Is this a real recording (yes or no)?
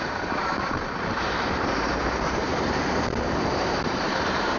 no